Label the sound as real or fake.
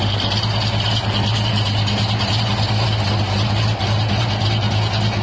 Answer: real